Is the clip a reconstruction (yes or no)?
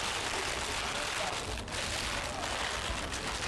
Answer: no